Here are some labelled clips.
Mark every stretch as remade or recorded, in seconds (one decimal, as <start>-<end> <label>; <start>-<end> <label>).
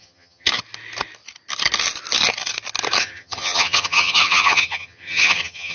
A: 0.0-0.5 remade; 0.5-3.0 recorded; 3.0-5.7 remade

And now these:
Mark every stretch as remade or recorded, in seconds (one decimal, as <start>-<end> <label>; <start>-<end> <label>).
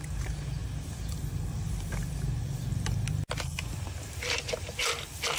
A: 0.0-0.6 remade; 0.6-3.8 recorded; 3.8-5.4 remade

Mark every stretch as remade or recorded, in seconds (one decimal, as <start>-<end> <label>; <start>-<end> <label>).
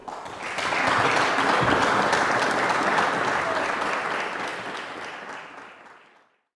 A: 0.0-6.6 recorded